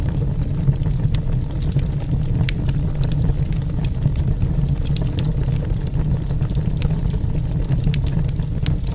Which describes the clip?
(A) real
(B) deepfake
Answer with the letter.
A